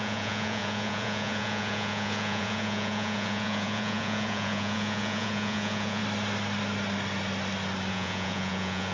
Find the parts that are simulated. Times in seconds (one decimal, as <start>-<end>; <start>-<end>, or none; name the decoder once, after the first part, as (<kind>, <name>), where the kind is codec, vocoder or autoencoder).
0.0-6.0 (vocoder, Vocos); 7.9-8.9